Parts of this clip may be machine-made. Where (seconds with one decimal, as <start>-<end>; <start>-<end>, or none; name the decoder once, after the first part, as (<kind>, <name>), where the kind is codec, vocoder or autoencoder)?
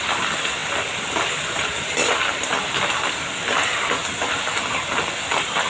none